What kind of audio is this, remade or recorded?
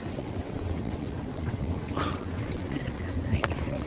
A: remade